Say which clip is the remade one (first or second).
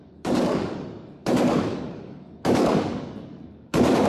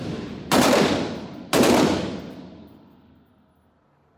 first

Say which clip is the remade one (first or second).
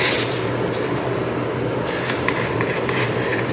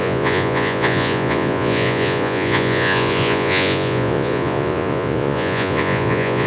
second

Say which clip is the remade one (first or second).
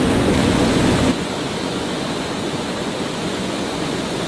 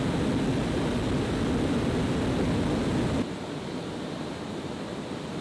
first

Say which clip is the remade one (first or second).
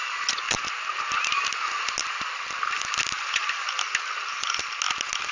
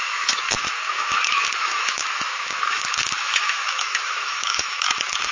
second